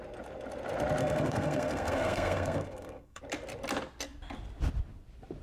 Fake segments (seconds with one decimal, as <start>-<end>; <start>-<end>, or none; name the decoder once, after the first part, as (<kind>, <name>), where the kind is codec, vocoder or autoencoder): 1.0-3.2 (codec, SNAC)